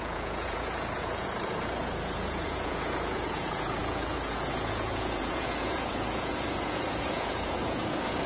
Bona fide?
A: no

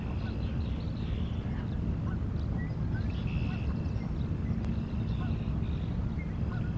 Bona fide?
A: yes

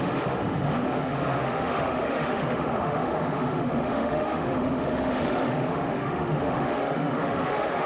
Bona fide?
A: no